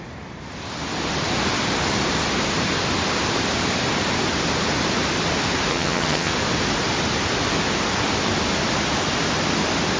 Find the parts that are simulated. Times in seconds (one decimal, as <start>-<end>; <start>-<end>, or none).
5.7-6.3